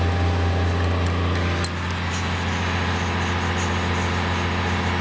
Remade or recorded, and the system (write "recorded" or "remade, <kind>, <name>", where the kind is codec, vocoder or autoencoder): recorded